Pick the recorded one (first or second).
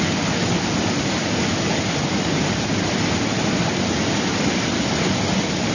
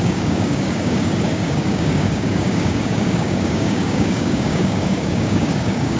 first